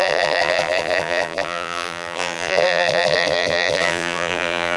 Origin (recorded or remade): remade